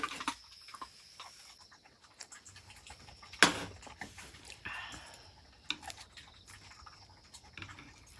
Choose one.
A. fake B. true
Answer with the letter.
B